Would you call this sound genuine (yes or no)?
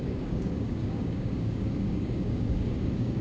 no